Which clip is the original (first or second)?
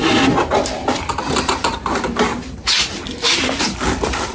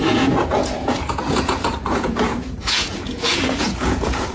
first